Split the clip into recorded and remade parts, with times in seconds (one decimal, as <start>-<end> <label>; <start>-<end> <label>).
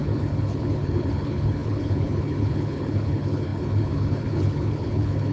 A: 0.0-5.3 remade